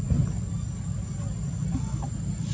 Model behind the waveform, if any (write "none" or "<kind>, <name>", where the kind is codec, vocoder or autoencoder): none